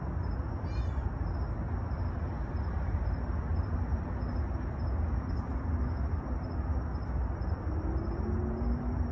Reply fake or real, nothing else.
real